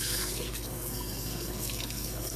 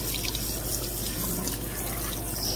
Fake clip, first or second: first